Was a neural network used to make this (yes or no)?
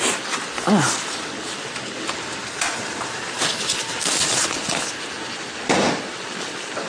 no